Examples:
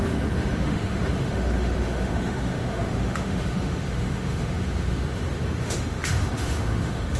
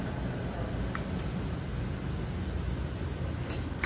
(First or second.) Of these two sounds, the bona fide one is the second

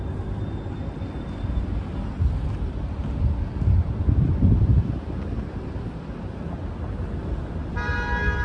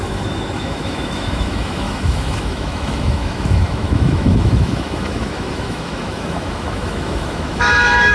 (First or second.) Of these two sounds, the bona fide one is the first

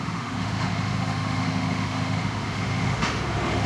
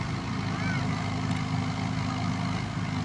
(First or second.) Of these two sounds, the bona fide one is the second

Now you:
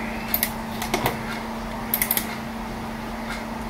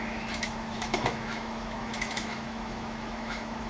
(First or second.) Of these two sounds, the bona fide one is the first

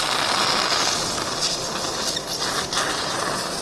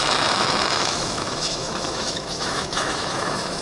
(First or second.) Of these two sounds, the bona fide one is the first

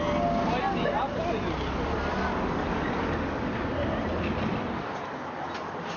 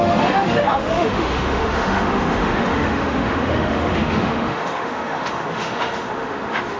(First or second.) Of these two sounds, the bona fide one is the first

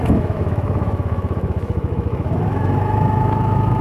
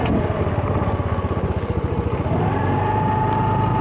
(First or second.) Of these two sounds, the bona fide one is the second